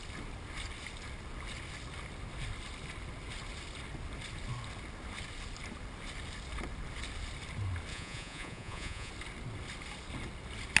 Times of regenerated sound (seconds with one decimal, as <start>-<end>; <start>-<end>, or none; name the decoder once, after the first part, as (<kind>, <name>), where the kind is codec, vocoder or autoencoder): 7.9-9.1 (vocoder, Vocos)